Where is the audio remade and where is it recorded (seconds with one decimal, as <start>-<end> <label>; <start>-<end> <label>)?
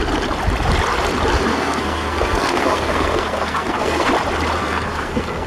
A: 0.0-1.5 recorded; 1.5-4.1 remade; 4.1-4.6 recorded; 4.6-5.5 remade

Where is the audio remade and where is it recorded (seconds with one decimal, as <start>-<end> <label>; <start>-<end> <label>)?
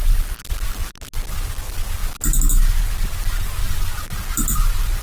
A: 0.0-5.0 recorded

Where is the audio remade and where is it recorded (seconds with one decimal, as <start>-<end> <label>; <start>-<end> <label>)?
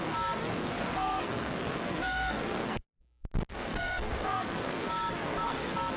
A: 0.0-2.8 remade; 2.8-3.5 recorded; 3.5-6.0 remade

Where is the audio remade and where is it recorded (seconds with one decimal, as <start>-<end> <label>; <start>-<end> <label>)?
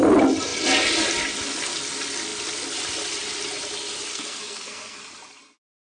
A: 0.0-4.1 recorded; 4.1-5.0 remade; 5.0-5.8 recorded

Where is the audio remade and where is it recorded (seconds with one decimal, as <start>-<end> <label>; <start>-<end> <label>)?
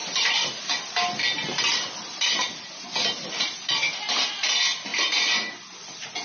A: 0.0-6.2 recorded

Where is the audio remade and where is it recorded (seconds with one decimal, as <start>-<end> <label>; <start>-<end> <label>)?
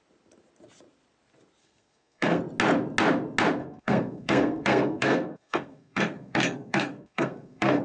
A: 0.0-1.6 recorded; 1.6-2.4 remade; 2.4-3.6 recorded; 3.6-7.8 remade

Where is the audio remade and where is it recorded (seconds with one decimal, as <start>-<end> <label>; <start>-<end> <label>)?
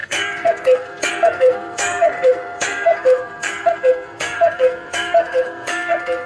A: 0.0-6.3 remade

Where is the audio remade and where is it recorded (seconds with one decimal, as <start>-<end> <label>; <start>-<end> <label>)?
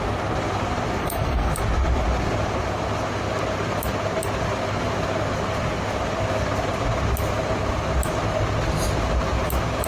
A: 0.0-1.0 recorded; 1.0-1.5 remade; 1.5-9.9 recorded